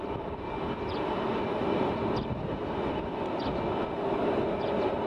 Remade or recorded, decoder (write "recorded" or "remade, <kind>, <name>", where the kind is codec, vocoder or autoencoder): recorded